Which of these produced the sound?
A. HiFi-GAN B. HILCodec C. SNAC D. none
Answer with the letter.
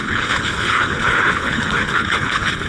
B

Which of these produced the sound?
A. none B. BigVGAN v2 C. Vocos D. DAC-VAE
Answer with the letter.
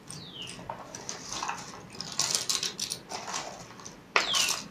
A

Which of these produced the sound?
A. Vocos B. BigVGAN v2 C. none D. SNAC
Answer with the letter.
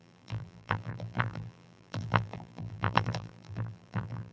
B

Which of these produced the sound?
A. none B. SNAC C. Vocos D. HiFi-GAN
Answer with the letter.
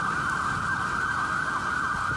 A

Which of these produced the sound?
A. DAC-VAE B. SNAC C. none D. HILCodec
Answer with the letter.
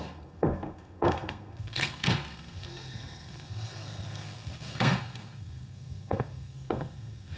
B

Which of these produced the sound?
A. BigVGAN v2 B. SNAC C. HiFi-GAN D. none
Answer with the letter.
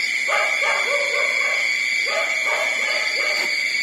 D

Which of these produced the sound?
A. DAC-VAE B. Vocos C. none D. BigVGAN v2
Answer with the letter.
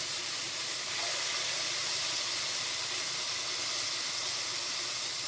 D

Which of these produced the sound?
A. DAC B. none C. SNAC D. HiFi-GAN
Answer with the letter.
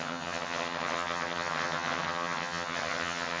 D